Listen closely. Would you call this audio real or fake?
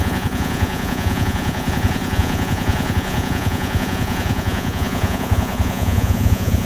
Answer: fake